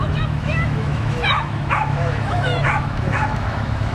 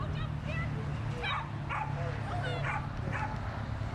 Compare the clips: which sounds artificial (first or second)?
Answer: first